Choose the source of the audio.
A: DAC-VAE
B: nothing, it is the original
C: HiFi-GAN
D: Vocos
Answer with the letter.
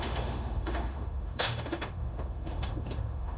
A